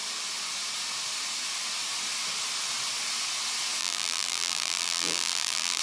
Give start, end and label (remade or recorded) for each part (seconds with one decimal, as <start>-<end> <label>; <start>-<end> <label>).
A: 0.0-3.8 recorded; 3.8-5.8 remade